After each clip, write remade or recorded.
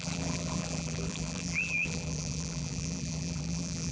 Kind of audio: remade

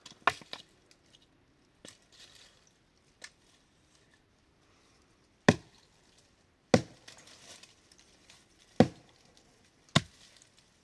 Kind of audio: recorded